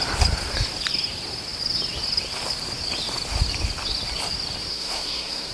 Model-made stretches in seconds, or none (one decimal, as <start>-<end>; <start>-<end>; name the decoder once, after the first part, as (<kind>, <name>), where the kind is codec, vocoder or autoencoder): 4.7-5.5 (codec, SNAC)